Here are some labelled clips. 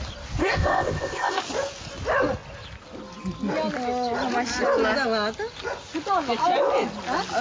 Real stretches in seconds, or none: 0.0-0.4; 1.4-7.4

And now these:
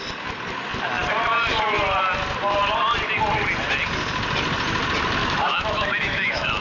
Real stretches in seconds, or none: 0.0-5.2

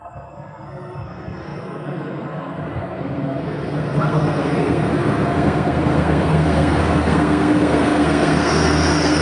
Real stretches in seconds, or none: none

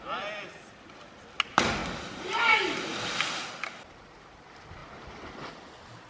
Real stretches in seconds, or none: 0.0-6.1

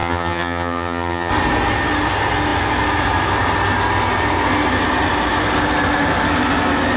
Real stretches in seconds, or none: 1.3-7.0

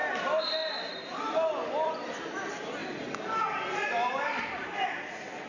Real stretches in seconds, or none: 2.0-2.8; 4.9-5.5

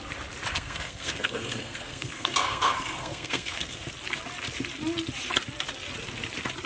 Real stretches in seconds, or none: 0.0-0.5; 3.9-6.7

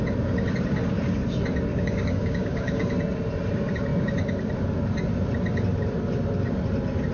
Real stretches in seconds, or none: 0.0-1.7; 2.9-7.1